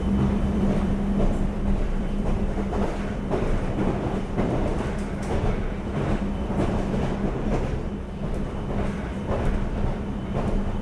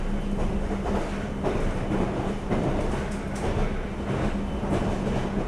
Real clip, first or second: second